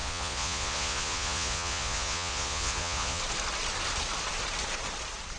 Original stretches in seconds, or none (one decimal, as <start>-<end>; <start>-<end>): 3.2-5.4